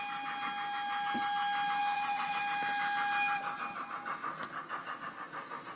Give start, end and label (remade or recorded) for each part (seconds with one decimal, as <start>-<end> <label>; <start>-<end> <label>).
0.0-1.8 recorded; 1.8-2.4 remade; 2.4-5.8 recorded